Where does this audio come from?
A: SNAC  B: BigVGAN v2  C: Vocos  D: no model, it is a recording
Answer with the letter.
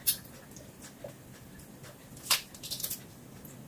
D